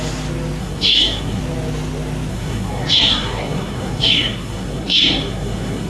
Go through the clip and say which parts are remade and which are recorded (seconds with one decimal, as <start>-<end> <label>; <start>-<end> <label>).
0.0-0.6 recorded; 0.6-1.4 remade; 1.4-2.3 recorded; 2.3-5.9 remade